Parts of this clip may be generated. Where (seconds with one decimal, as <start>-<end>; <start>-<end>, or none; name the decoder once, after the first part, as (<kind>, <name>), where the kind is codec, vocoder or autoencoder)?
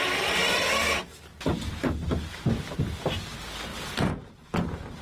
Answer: 1.3-2.3 (vocoder, BigVGAN v2); 3.7-5.0